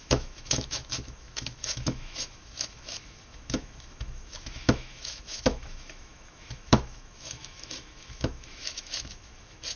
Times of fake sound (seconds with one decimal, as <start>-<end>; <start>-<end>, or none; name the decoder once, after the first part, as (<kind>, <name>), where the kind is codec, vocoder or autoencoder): 0.0-9.8 (autoencoder, DAC-VAE)